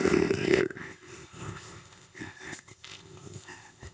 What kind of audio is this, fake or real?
fake